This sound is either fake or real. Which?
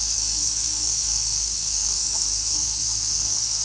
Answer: fake